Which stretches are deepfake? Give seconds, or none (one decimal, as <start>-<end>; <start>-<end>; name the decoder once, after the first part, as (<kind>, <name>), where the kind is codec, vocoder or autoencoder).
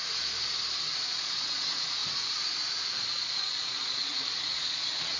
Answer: 1.1-2.0 (vocoder, Vocos); 3.1-5.2